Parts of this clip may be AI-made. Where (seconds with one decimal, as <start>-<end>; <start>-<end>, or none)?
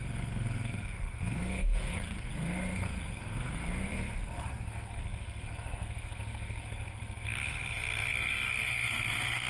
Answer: 0.0-9.5